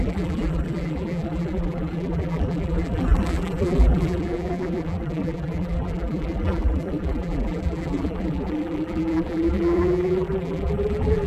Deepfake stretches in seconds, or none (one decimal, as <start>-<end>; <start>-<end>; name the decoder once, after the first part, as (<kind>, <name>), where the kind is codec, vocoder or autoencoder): 0.0-11.3 (vocoder, BigVGAN v2)